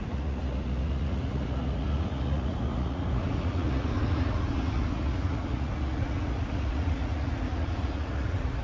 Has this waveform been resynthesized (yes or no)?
yes